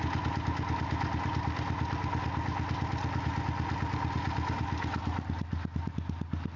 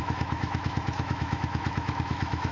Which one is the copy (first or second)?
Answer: second